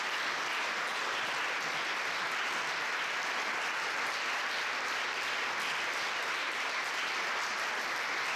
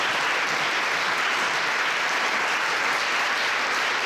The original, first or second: first